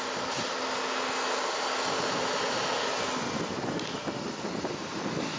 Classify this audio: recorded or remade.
recorded